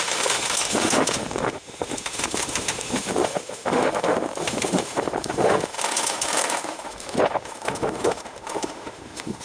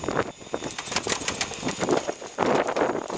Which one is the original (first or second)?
second